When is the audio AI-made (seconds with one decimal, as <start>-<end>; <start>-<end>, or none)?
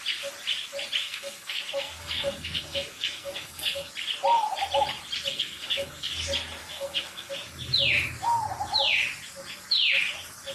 1.0-3.9; 5.3-6.1; 6.6-7.3